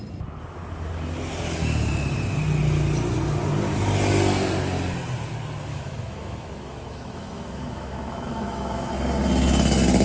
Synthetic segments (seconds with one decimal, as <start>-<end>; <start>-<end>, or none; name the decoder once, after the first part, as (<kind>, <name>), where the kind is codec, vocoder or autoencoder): 5.7-8.9 (autoencoder, DAC-VAE)